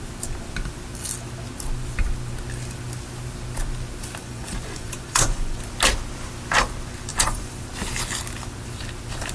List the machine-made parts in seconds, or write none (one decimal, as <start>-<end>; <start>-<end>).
4.2-5.6; 7.1-7.6